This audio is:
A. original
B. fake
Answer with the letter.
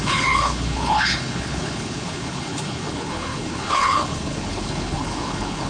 B